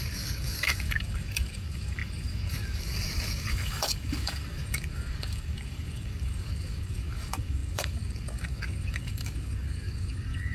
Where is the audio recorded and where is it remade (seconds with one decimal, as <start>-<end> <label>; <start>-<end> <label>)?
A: 0.0-10.5 remade